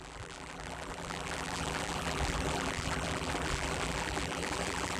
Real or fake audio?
fake